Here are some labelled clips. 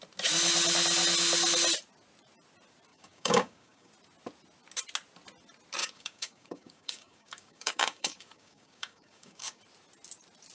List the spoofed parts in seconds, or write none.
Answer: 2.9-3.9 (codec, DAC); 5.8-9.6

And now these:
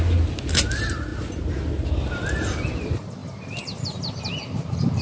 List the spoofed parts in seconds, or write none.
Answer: none

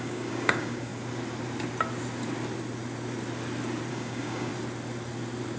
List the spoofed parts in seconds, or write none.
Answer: 0.0-0.9 (codec, DAC); 3.9-4.5

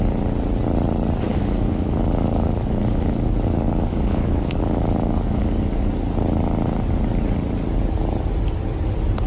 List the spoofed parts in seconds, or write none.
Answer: 1.3-5.9 (codec, DAC)

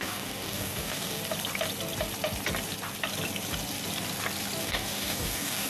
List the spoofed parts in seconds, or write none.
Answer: 0.0-1.2 (codec, DAC); 4.6-5.7

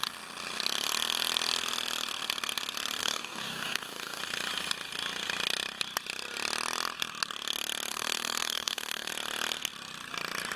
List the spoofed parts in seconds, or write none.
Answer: 3.0-4.2 (codec, DAC); 7.9-9.1

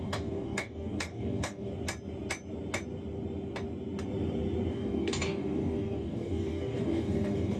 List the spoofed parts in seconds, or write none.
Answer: 0.0-1.7 (codec, DAC); 4.7-7.6

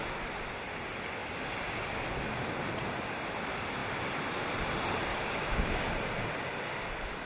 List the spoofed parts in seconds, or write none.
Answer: 5.1-5.8 (codec, DAC)